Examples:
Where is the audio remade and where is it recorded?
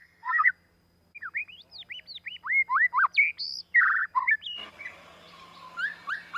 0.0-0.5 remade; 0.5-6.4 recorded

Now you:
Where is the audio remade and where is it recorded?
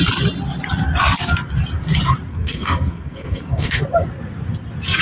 0.0-2.3 recorded; 2.3-3.8 remade; 3.8-5.0 recorded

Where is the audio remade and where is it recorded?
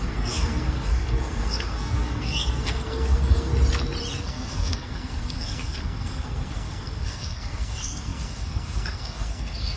0.0-3.5 remade; 3.5-4.2 recorded; 4.2-9.8 remade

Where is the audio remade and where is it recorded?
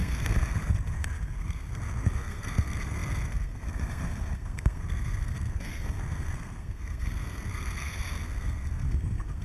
0.0-9.4 remade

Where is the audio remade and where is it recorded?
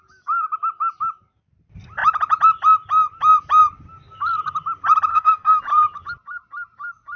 0.0-5.1 recorded; 5.1-5.6 remade; 5.6-7.2 recorded